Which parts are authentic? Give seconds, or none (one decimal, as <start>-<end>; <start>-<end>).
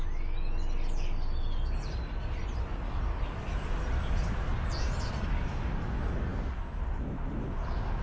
0.0-8.0